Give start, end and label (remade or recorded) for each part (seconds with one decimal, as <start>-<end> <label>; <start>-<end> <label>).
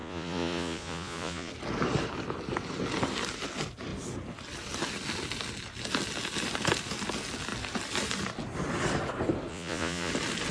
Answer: 0.0-1.5 remade; 1.5-9.5 recorded; 9.5-10.1 remade; 10.1-10.5 recorded